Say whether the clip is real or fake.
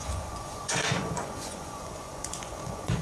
fake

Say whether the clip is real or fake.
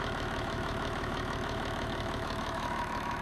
fake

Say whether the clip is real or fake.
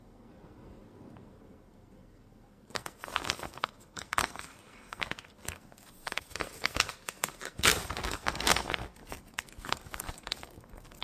fake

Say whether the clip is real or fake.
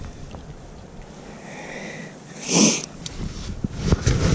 real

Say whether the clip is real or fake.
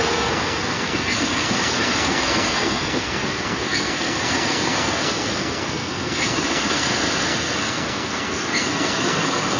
fake